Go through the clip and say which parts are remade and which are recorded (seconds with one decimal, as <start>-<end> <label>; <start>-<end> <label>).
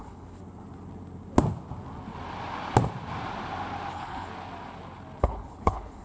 0.0-0.4 remade; 0.4-3.9 recorded; 3.9-4.3 remade; 4.3-5.2 recorded; 5.2-6.0 remade